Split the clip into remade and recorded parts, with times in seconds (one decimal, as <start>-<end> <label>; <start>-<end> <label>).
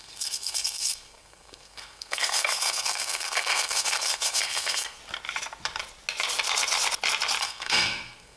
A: 0.0-5.0 remade; 5.0-7.4 recorded; 7.4-8.4 remade